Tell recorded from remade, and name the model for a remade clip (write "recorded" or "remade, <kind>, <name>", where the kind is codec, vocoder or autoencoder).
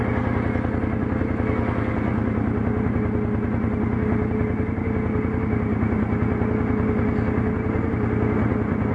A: recorded